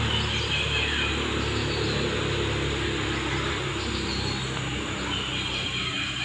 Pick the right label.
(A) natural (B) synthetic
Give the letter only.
A